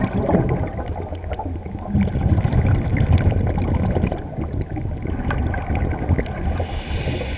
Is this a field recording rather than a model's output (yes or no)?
yes